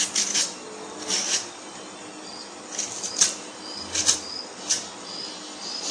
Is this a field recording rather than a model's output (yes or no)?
yes